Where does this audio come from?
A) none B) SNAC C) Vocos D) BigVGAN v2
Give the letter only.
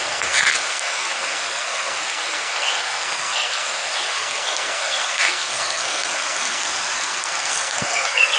B